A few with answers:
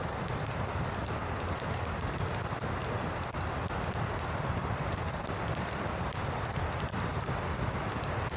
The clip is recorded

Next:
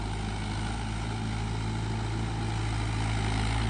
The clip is remade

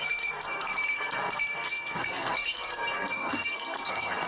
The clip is remade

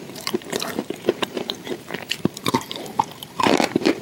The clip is remade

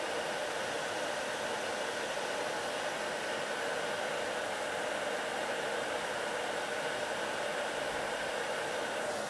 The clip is recorded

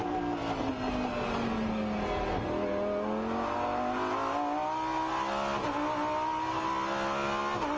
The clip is recorded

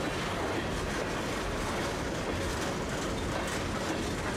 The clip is recorded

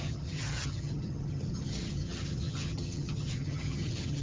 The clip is remade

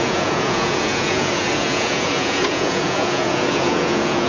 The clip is remade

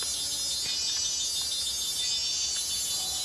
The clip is recorded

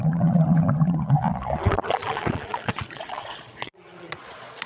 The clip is remade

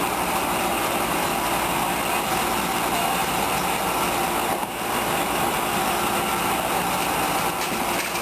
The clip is remade